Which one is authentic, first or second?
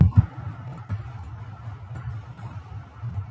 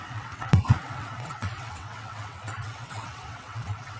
first